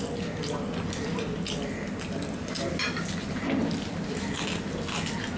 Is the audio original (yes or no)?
yes